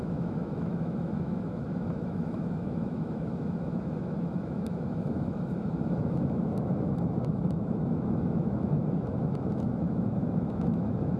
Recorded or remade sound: remade